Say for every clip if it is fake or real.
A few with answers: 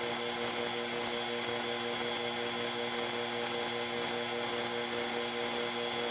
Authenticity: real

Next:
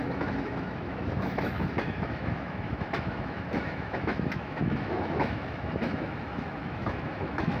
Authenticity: fake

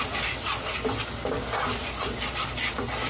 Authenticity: real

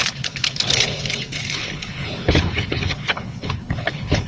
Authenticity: fake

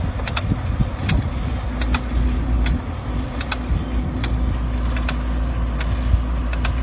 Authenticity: real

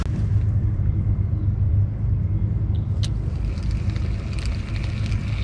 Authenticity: real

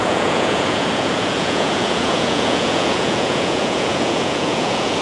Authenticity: fake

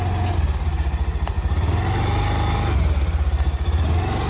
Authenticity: real